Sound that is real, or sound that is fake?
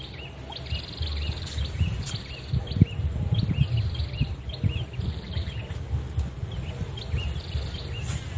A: real